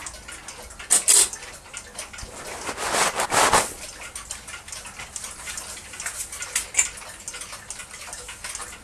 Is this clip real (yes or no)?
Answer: yes